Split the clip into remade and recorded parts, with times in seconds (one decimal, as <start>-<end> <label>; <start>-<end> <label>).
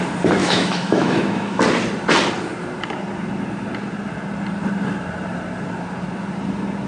0.0-0.4 recorded; 0.4-1.6 remade; 1.6-6.9 recorded